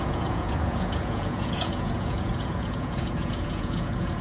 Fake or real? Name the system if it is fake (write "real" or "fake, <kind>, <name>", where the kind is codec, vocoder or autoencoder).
fake, vocoder, Vocos